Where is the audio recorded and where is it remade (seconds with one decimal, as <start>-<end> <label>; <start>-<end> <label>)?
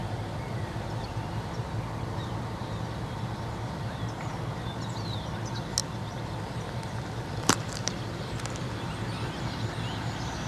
0.0-1.8 remade; 1.8-5.8 recorded; 5.8-8.9 remade; 8.9-10.5 recorded